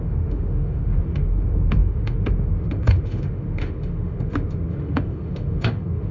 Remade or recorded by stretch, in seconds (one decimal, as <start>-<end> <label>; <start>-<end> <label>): 0.0-6.1 remade

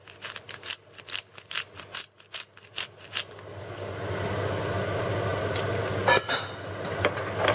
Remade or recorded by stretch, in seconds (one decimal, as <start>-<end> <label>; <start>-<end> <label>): 0.0-7.5 recorded

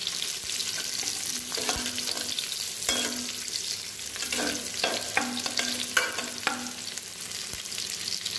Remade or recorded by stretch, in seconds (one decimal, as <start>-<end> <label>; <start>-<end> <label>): 0.0-8.4 recorded

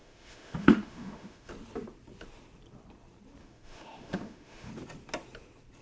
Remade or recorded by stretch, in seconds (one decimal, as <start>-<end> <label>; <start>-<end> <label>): 0.0-1.5 remade; 1.5-3.4 recorded; 3.4-4.7 remade; 4.7-5.8 recorded

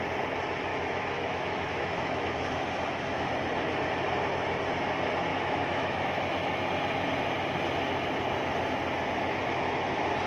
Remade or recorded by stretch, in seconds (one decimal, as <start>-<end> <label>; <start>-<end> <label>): 0.0-0.7 recorded; 0.7-3.3 remade; 3.3-5.3 recorded; 5.3-6.6 remade; 6.6-9.4 recorded; 9.4-9.9 remade; 9.9-10.3 recorded

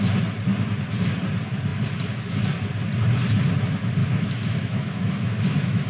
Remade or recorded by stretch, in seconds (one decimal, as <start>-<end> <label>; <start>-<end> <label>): 0.0-4.0 recorded; 4.0-5.9 remade

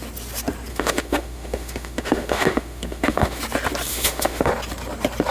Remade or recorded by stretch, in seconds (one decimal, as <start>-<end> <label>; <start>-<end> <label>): 0.0-0.7 recorded; 0.7-3.4 remade; 3.4-3.9 recorded; 3.9-4.5 remade; 4.5-5.3 recorded

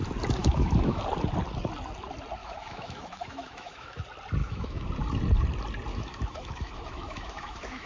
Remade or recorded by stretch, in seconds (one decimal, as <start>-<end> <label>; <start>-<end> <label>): 0.0-0.4 recorded; 0.4-1.0 remade; 1.0-2.4 recorded; 2.4-4.0 remade; 4.0-4.4 recorded; 4.4-4.9 remade; 4.9-5.9 recorded; 5.9-7.9 remade